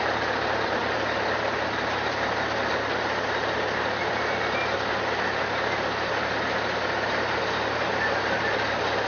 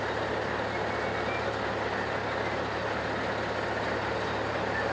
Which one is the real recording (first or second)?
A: second